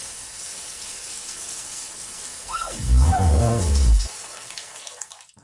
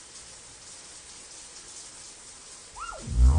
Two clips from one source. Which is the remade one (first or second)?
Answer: first